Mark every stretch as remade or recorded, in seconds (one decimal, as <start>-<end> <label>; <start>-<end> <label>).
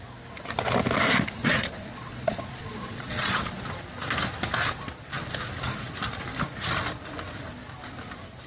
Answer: 0.0-1.4 recorded; 1.4-3.7 remade; 3.7-8.5 recorded